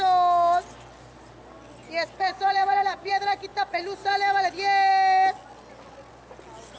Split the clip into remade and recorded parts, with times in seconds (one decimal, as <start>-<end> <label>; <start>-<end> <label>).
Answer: 0.0-2.3 recorded; 2.3-3.1 remade; 3.1-6.8 recorded